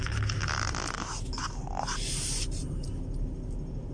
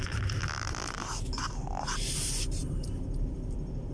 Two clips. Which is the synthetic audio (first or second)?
second